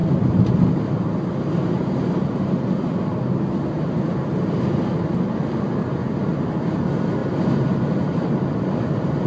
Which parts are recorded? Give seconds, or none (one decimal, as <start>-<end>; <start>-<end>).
0.0-9.3